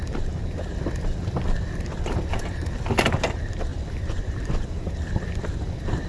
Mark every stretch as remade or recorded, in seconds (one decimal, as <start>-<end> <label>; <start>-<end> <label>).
0.0-0.4 recorded; 0.4-2.0 remade; 2.0-3.7 recorded; 3.7-6.1 remade